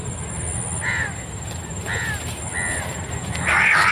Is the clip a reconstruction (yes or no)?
no